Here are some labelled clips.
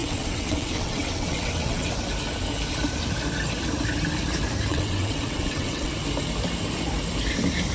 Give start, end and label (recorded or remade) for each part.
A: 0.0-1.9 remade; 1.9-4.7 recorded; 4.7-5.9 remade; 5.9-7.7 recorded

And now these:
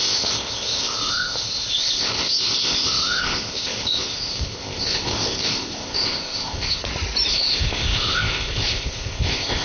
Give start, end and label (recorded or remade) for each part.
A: 0.0-6.8 remade; 6.8-7.3 recorded; 7.3-9.6 remade

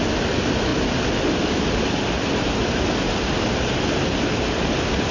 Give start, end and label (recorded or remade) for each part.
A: 0.0-5.1 recorded